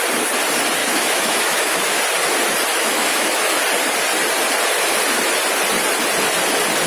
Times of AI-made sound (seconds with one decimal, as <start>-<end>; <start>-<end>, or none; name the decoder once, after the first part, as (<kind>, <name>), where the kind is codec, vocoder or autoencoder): 0.8-2.0 (autoencoder, DAC-VAE); 2.7-3.6